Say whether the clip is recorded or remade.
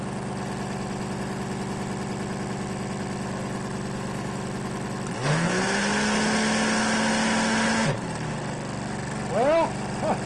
recorded